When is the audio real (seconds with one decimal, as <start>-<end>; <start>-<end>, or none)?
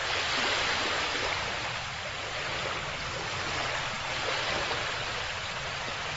0.0-6.2